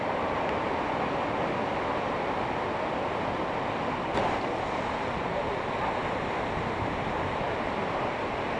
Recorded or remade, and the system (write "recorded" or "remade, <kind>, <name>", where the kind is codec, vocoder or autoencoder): recorded